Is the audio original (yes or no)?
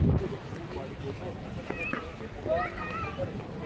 yes